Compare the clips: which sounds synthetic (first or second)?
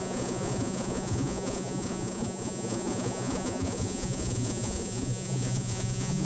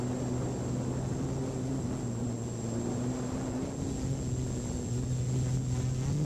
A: first